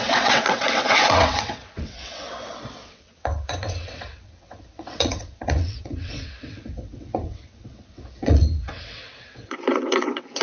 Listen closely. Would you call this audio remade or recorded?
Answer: remade